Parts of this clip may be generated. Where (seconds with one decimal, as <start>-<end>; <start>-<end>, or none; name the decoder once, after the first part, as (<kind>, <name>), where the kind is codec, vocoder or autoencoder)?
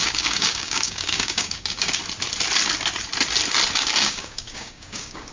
0.0-2.0 (codec, DAC); 4.0-5.3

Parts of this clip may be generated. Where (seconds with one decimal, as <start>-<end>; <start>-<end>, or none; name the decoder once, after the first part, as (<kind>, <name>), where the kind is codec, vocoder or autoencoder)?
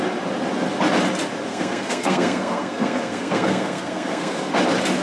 1.5-4.5 (codec, SNAC)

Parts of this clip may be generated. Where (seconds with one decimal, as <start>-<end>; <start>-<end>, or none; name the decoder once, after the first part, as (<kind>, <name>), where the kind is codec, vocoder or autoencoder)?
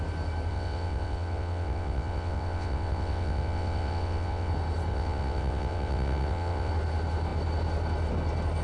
0.5-4.5 (vocoder, WaveNeXt); 4.9-6.7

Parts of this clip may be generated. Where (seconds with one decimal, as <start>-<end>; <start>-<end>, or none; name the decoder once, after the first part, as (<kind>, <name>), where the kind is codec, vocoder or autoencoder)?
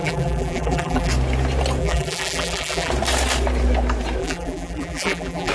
0.0-1.1 (vocoder, BigVGAN v2); 1.8-2.9; 4.2-5.5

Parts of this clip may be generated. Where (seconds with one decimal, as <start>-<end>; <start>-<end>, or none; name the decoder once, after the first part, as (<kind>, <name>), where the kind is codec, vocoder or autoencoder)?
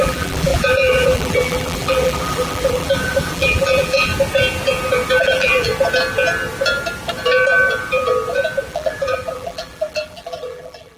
0.0-4.1 (vocoder, BigVGAN v2); 5.2-5.7; 8.7-11.0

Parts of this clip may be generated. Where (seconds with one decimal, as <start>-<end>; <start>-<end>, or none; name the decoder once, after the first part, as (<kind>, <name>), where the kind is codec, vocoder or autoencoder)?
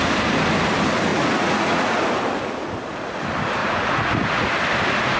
1.1-2.0 (vocoder, Vocos); 3.6-4.5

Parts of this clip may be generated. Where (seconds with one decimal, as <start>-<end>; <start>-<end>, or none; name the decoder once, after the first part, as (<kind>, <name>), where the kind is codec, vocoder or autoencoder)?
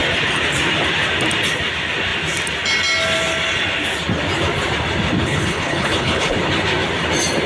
5.2-6.3 (codec, HILCodec)